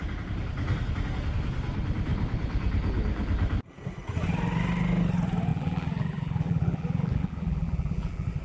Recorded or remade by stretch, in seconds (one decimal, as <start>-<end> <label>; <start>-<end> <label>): 0.0-5.5 recorded; 5.5-8.4 remade